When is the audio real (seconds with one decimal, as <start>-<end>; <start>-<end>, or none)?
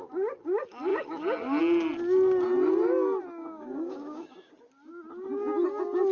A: 0.0-3.4; 4.5-6.1